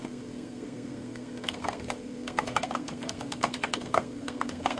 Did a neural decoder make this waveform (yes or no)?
yes